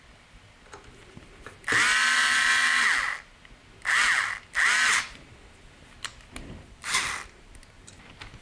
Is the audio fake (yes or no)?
no